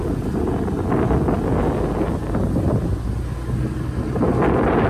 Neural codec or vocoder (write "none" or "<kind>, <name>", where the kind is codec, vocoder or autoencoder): none